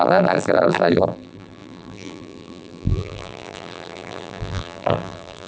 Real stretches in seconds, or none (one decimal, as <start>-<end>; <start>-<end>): none